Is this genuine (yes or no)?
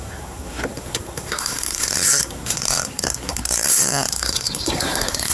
no